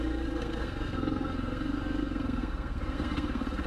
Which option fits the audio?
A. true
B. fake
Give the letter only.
B